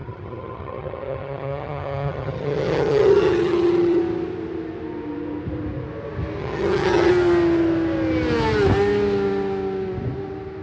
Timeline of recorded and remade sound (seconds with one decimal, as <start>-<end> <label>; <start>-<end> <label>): 0.0-4.0 remade; 4.0-6.4 recorded; 6.4-7.1 remade; 7.1-10.6 recorded